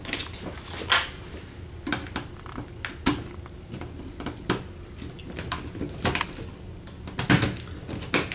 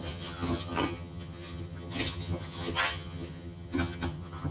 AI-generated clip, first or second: second